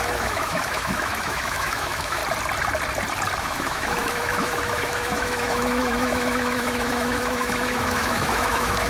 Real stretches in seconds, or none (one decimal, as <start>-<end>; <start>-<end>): 2.2-3.4